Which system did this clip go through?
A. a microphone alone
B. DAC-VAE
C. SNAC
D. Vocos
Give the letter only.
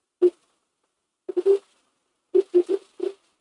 A